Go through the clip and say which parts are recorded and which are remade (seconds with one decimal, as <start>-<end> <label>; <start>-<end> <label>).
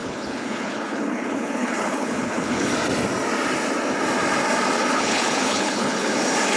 0.0-2.7 remade; 2.7-4.9 recorded; 4.9-6.1 remade; 6.1-6.6 recorded